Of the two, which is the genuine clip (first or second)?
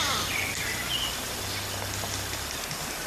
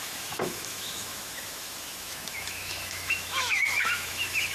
first